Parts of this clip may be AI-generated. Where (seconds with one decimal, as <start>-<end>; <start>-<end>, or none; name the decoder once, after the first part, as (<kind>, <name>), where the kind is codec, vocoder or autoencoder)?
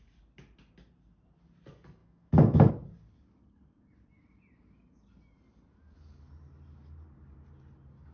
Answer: 2.0-2.7 (autoencoder, DAC-VAE)